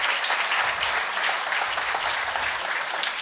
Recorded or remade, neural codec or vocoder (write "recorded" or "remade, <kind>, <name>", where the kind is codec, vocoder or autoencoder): recorded